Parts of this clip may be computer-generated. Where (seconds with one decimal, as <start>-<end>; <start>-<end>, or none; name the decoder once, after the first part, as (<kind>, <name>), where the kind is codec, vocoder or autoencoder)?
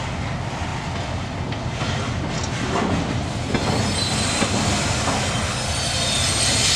none